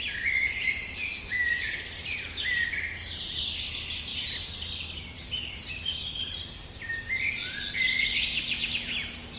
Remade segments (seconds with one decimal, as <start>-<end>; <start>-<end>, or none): 4.1-6.9